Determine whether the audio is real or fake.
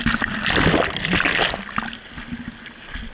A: real